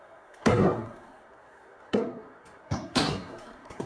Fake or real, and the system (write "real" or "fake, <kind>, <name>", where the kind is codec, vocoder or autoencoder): fake, codec, SNAC